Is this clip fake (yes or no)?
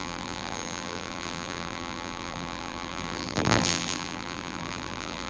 yes